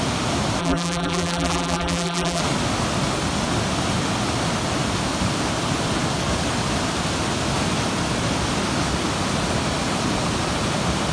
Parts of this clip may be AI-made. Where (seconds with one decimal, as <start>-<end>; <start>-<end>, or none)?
0.6-2.4